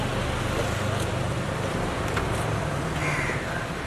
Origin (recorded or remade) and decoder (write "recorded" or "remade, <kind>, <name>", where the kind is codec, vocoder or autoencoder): recorded